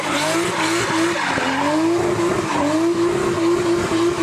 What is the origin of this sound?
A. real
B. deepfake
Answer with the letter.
A